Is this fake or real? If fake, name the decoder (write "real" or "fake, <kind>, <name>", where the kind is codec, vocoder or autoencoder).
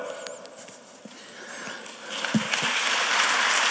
real